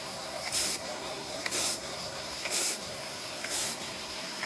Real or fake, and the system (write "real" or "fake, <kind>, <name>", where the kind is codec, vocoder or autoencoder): fake, codec, SNAC